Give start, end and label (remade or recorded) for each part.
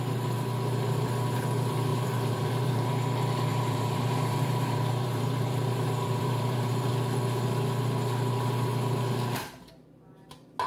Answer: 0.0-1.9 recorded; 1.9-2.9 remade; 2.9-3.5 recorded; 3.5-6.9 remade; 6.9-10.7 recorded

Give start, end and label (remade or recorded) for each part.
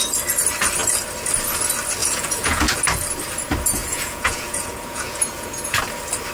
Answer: 0.0-2.0 recorded; 2.0-2.8 remade; 2.8-3.8 recorded; 3.8-5.8 remade; 5.8-6.3 recorded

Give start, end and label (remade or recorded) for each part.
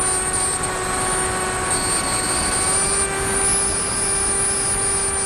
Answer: 0.0-5.3 recorded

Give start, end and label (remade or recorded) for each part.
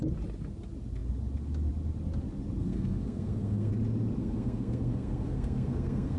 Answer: 0.0-2.6 recorded; 2.6-3.7 remade; 3.7-4.2 recorded; 4.2-6.2 remade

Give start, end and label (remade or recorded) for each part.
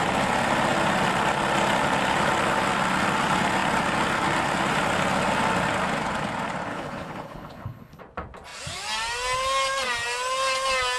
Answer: 0.0-6.7 recorded; 6.7-8.0 remade; 8.0-11.0 recorded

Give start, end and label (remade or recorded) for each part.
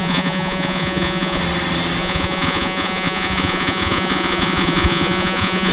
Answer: 0.0-1.4 remade; 1.4-2.0 recorded; 2.0-5.7 remade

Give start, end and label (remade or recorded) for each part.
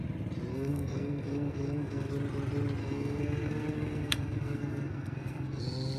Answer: 0.0-0.5 recorded; 0.5-2.1 remade; 2.1-2.8 recorded; 2.8-5.6 remade; 5.6-6.0 recorded